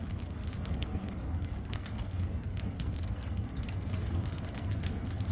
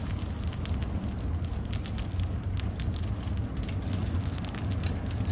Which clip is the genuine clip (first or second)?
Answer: second